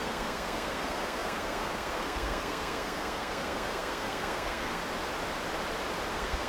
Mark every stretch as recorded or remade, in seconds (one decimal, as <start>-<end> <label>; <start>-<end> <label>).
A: 0.0-4.8 remade; 4.8-6.1 recorded; 6.1-6.5 remade